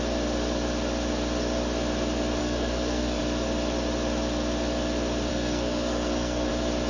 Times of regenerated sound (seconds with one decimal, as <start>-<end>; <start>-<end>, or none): 2.4-3.2; 5.3-6.5